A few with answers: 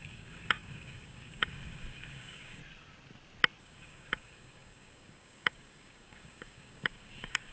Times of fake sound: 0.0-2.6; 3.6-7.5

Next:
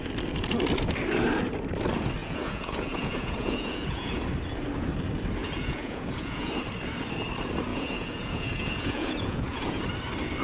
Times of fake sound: 2.2-4.2; 5.4-6.5; 7.7-9.8

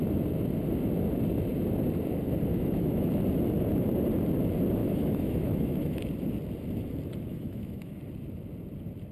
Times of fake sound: 2.5-3.1; 4.8-6.0; 7.3-8.0

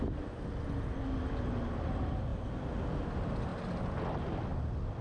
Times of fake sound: none

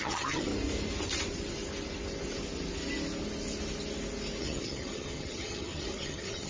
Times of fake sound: 0.0-0.5; 4.4-6.5

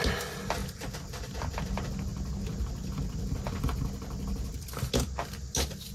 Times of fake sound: none

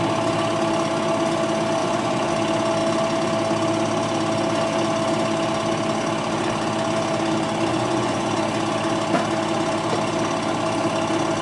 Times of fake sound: 1.8-2.3; 7.7-8.3